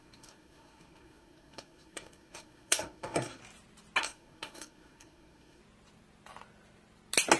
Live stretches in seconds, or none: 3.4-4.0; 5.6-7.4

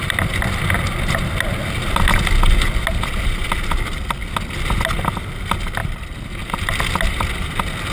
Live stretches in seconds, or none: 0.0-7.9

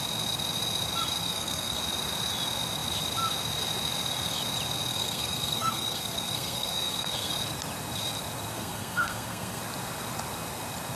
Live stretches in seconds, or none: 0.0-1.2; 1.8-4.9; 7.3-8.5; 9.6-11.0